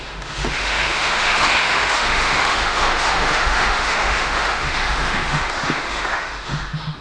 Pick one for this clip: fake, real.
fake